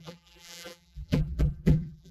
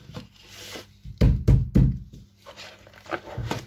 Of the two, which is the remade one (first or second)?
first